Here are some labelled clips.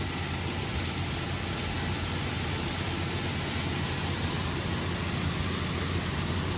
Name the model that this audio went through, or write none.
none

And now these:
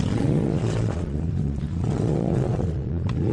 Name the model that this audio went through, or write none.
vocoder, Vocos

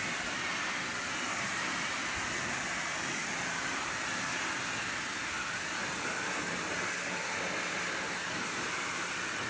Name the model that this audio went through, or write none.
none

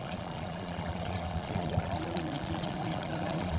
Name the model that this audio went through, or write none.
vocoder, Vocos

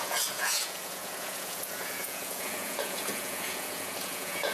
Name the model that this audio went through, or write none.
vocoder, Vocos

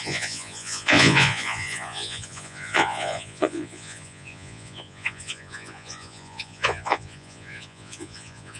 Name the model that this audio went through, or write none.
vocoder, Vocos